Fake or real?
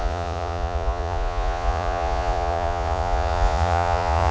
fake